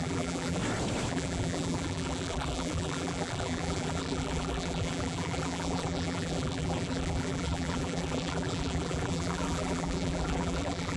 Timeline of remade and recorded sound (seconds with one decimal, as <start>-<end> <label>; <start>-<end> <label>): 0.0-0.6 remade; 0.6-1.1 recorded; 1.1-11.0 remade